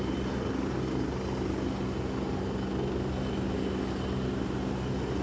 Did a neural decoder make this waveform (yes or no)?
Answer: no